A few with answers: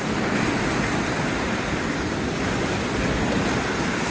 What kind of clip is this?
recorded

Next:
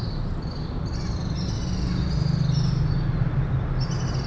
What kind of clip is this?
recorded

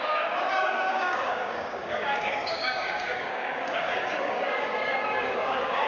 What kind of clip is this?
remade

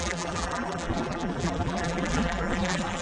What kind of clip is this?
remade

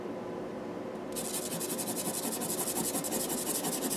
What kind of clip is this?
recorded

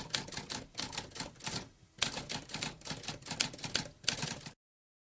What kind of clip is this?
recorded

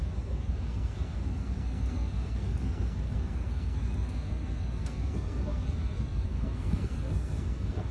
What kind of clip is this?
remade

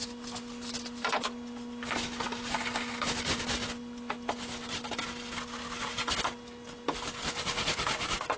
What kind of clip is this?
recorded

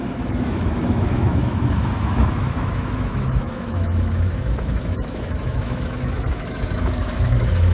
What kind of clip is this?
remade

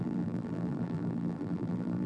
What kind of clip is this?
remade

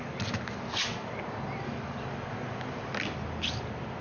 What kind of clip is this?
recorded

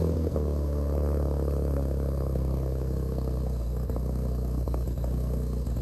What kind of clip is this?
remade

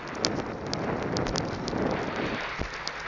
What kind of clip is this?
recorded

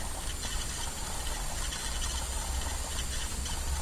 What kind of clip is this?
recorded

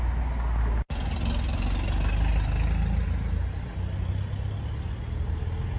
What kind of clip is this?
recorded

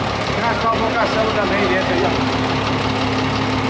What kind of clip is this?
recorded